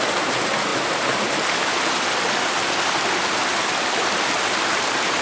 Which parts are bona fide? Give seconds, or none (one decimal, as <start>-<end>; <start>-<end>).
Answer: 0.0-5.2